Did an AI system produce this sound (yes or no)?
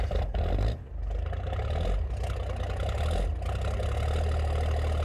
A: no